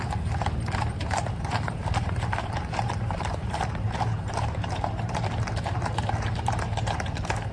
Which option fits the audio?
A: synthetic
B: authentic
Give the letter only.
A